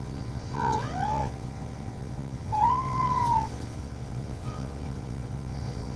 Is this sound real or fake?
fake